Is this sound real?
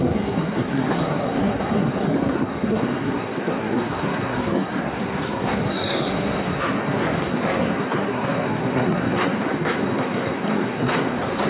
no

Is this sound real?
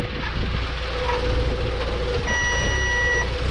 yes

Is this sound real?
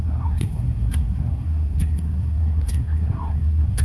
no